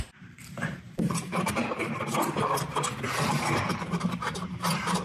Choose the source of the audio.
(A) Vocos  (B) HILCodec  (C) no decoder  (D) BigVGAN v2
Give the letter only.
D